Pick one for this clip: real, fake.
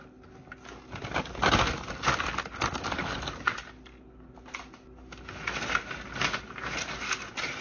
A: real